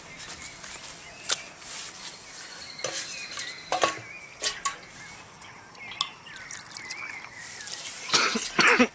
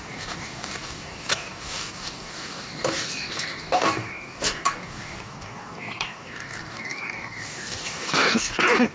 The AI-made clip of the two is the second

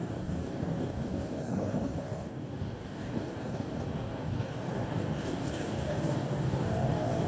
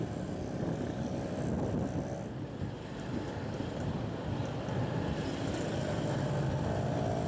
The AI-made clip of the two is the first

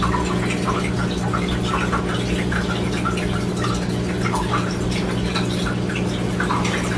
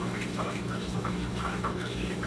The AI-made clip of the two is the second